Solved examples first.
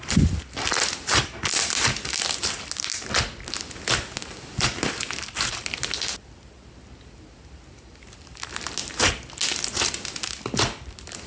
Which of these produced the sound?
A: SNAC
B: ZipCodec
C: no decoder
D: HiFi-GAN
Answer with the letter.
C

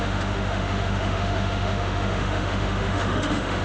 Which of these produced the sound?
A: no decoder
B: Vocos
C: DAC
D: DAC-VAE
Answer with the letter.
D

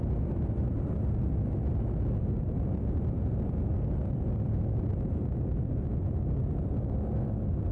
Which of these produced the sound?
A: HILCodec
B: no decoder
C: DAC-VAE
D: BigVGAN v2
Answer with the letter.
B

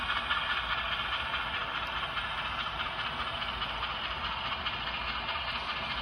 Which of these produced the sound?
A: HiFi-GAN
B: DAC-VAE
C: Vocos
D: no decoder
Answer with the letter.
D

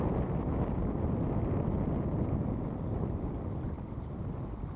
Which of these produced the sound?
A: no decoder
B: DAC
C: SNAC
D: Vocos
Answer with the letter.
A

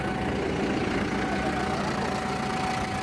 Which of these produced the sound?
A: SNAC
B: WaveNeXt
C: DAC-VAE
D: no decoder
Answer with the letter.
D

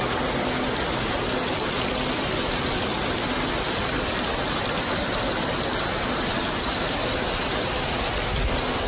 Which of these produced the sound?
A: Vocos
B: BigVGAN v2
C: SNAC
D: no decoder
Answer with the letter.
D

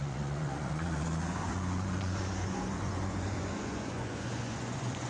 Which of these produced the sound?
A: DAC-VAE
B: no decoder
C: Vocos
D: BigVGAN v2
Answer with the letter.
C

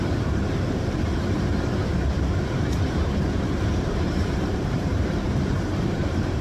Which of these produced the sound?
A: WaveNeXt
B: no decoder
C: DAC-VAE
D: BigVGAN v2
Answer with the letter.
D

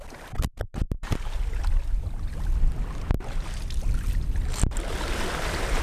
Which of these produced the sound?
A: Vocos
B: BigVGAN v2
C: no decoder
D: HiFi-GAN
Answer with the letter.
C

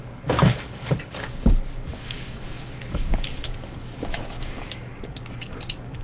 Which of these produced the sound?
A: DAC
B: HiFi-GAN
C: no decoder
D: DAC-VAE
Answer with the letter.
A